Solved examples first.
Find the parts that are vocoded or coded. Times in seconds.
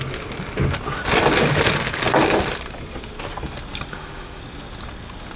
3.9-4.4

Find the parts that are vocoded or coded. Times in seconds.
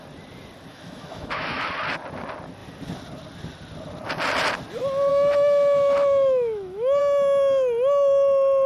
0.7-1.6; 5.1-7.0